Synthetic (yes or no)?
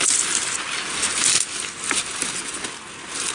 no